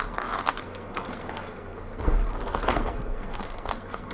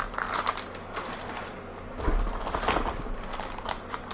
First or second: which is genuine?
second